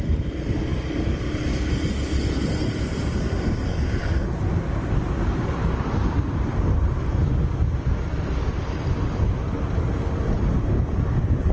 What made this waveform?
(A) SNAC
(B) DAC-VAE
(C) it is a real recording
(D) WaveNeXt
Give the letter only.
C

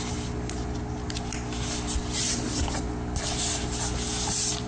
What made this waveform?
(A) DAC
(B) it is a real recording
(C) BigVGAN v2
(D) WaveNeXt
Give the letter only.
B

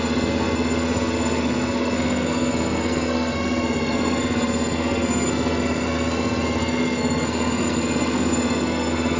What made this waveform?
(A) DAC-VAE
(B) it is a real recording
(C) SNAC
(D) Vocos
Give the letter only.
C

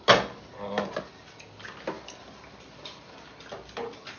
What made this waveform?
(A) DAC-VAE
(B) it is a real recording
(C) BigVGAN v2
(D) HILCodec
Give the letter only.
B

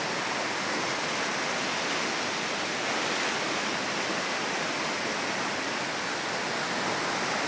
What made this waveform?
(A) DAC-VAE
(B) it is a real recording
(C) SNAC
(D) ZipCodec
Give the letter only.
B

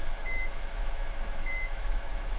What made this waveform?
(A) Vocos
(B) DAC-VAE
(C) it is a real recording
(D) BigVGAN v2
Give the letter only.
B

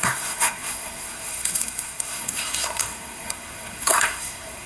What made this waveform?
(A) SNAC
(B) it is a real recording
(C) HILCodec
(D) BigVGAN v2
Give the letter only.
A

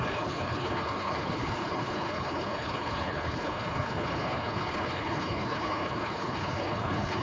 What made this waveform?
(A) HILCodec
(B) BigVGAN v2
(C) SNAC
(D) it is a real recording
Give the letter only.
A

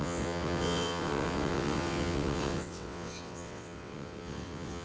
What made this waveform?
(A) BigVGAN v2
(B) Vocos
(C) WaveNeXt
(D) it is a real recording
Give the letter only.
C